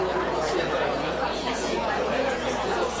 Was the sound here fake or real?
fake